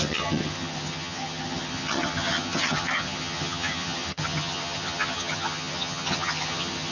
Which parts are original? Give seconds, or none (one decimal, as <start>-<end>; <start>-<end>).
none